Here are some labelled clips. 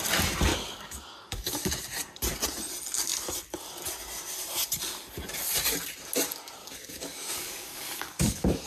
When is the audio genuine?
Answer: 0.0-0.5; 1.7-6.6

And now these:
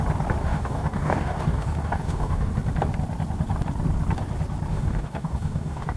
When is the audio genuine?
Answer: 0.0-0.4; 2.5-4.7

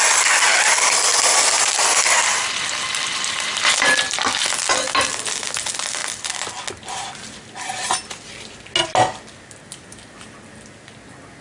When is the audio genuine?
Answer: 0.0-11.4

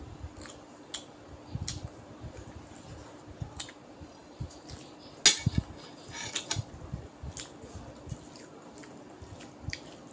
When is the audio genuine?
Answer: 0.0-10.1